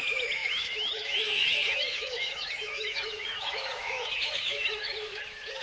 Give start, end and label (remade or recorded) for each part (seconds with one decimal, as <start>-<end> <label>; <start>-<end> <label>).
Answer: 0.0-5.6 remade